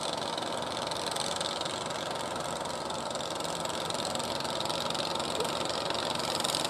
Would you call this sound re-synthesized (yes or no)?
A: no